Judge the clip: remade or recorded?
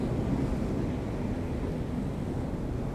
recorded